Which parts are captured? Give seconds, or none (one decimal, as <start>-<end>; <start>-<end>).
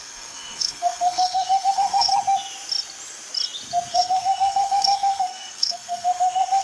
2.1-3.9